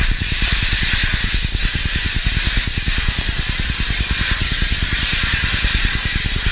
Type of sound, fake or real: fake